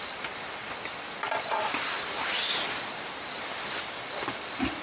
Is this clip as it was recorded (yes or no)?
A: yes